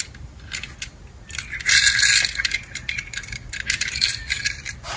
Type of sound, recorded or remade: recorded